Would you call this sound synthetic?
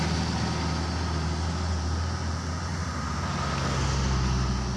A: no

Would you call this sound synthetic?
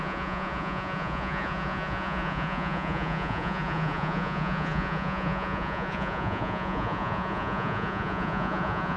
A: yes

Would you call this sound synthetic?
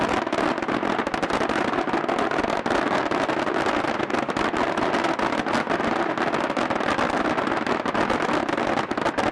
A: no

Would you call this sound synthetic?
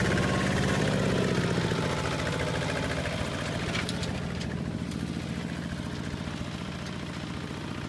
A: no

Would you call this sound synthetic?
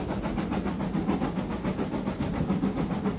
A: no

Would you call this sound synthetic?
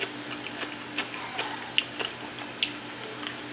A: no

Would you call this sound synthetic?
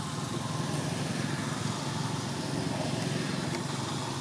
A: no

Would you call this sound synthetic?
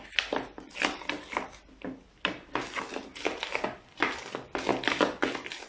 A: no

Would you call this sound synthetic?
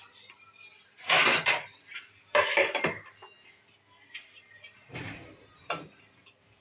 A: yes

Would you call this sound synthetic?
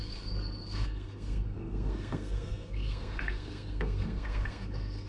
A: yes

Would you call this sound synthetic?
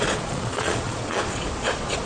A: yes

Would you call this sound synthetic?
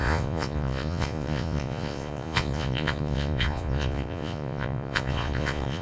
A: yes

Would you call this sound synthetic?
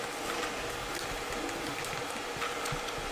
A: no